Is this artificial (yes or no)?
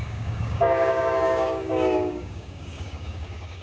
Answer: yes